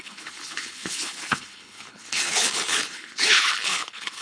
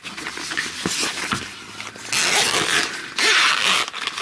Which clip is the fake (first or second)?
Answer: first